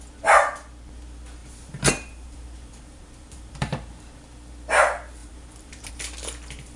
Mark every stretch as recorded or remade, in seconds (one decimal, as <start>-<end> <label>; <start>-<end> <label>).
0.0-1.4 recorded; 1.4-4.2 remade; 4.2-5.2 recorded; 5.2-5.9 remade; 5.9-6.8 recorded